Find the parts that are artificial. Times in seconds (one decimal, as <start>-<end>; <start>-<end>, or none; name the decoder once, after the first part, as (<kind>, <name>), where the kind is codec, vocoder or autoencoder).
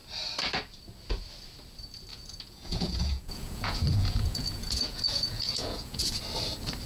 2.1-6.2 (vocoder, Vocos)